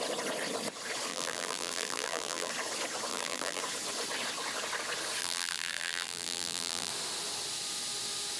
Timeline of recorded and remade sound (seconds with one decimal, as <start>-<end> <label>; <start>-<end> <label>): 0.0-1.1 recorded; 1.1-2.5 remade; 2.5-3.1 recorded; 3.1-3.6 remade; 3.6-5.2 recorded; 5.2-6.9 remade; 6.9-8.4 recorded

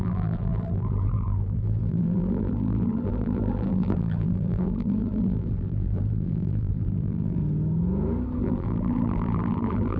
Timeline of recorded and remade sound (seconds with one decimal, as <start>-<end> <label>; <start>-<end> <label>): 0.0-7.4 remade; 7.4-8.4 recorded; 8.4-10.0 remade

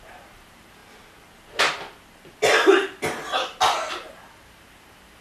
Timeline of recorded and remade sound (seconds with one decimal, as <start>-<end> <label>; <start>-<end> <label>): 0.0-0.8 remade; 0.8-3.9 recorded; 3.9-5.2 remade

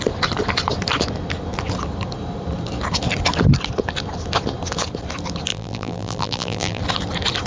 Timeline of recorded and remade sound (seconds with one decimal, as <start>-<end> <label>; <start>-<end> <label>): 0.0-5.5 recorded; 5.5-6.8 remade; 6.8-7.5 recorded

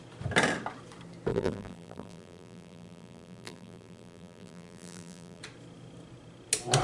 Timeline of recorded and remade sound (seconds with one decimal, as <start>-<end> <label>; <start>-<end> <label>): 0.0-1.3 recorded; 1.3-5.4 remade; 5.4-6.8 recorded

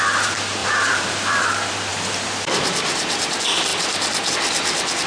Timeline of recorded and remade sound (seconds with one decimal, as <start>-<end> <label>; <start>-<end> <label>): 0.0-0.6 recorded; 0.6-1.4 remade; 1.4-3.7 recorded; 3.7-4.3 remade; 4.3-5.1 recorded

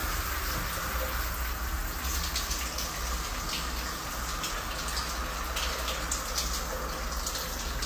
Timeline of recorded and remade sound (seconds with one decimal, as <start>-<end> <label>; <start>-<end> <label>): 0.0-0.6 remade; 0.6-7.9 recorded

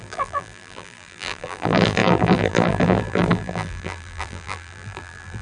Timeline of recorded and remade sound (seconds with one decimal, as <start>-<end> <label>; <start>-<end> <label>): 0.0-5.4 remade